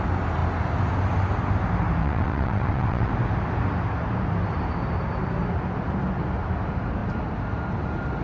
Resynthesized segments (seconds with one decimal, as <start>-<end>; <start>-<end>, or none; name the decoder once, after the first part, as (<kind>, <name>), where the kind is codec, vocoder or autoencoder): 2.0-3.1 (vocoder, WaveNeXt)